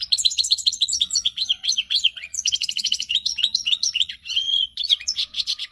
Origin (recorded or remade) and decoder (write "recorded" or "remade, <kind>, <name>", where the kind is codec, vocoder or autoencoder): remade, vocoder, Vocos